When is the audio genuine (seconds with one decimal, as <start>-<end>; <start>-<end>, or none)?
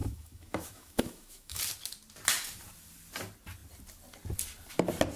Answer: 1.6-5.2